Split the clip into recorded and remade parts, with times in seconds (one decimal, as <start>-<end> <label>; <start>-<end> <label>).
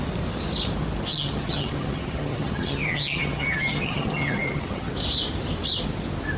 0.0-1.1 recorded; 1.1-4.9 remade; 4.9-6.4 recorded